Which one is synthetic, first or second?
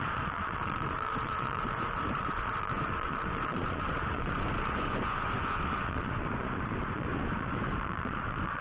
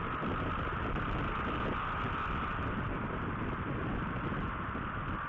first